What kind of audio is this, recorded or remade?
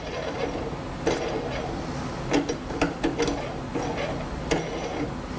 recorded